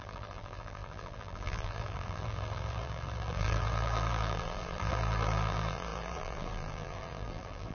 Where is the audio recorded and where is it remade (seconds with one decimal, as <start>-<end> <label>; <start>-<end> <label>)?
0.0-7.7 remade